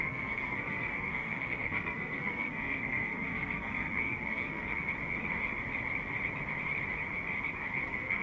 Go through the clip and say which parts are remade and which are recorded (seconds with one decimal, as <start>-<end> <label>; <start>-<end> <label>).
0.0-4.9 remade; 4.9-7.7 recorded; 7.7-8.2 remade